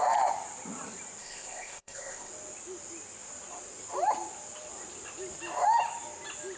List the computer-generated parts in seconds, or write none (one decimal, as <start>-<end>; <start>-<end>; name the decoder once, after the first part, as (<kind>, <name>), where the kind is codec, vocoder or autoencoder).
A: 1.2-2.3 (codec, ZipCodec)